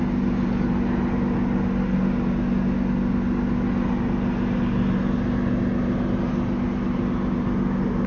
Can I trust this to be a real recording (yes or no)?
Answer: yes